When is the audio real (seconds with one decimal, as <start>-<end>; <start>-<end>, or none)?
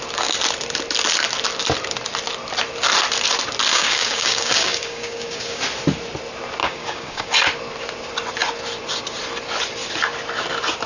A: 0.0-3.7; 5.6-6.6; 7.3-10.9